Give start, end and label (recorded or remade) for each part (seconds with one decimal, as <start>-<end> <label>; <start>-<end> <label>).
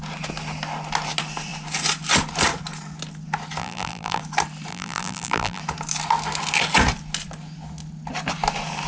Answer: 0.0-3.6 recorded; 3.6-4.2 remade; 4.2-4.7 recorded; 4.7-5.6 remade; 5.6-8.9 recorded